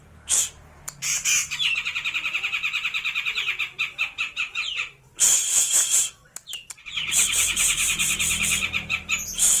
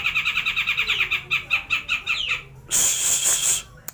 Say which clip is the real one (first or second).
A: second